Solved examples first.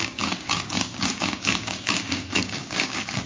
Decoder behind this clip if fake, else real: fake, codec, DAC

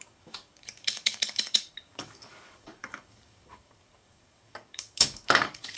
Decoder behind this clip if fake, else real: fake, codec, DAC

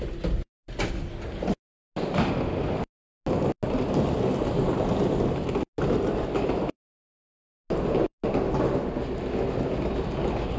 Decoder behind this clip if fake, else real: real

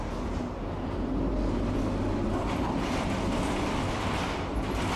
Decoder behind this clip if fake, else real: real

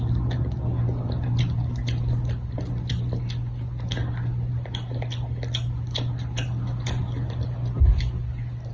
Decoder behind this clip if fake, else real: real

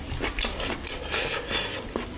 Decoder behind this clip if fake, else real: real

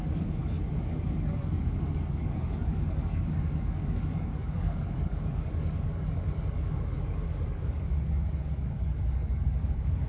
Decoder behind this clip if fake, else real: fake, codec, DAC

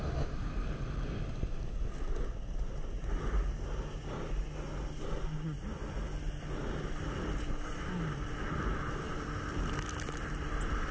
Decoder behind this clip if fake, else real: real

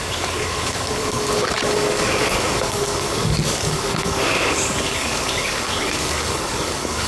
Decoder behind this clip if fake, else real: fake, codec, DAC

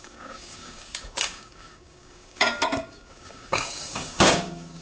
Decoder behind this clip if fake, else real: fake, codec, DAC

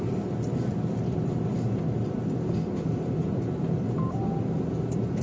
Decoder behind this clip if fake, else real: real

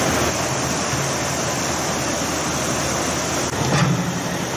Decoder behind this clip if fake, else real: real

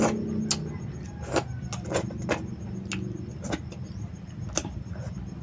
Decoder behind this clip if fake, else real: real